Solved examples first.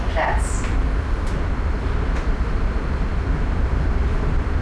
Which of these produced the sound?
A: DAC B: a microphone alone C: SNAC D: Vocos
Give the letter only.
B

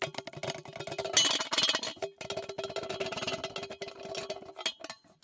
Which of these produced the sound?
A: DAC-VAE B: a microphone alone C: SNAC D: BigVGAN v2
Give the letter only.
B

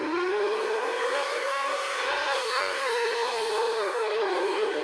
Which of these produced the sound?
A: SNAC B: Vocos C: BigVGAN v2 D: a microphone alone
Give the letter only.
A